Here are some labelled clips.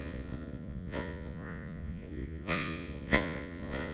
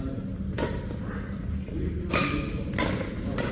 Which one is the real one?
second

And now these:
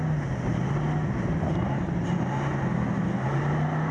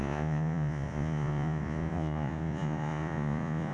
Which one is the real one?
first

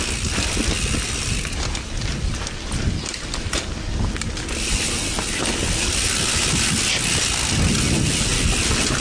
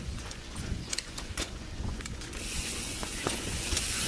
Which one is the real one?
first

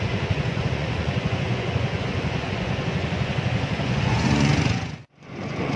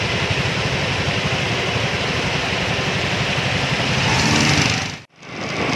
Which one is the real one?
second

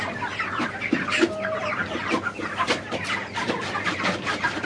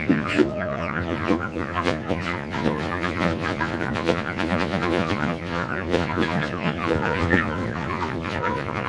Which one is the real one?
first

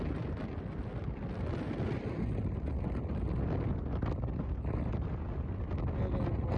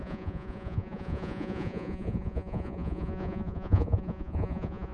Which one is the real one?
first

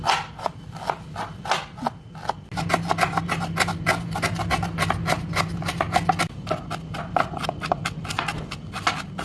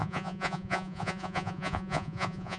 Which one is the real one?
first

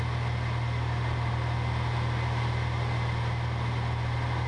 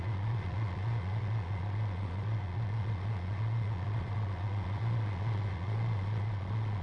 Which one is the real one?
first